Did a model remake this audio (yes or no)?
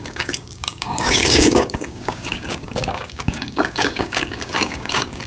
yes